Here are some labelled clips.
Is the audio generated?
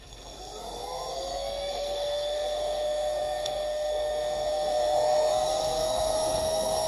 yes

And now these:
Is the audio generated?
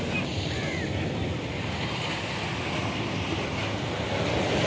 no